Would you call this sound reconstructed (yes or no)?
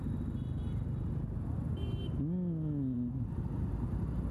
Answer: no